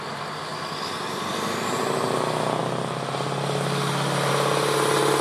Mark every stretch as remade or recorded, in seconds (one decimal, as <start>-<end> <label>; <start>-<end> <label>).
0.0-5.2 recorded